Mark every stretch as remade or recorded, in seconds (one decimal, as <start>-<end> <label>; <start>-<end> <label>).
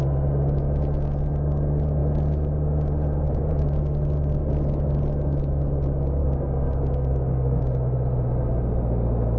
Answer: 0.0-6.2 recorded; 6.2-7.6 remade; 7.6-9.4 recorded